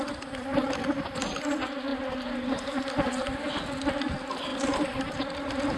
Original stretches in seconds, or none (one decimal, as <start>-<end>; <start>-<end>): 0.0-1.9; 3.5-4.5; 5.1-5.8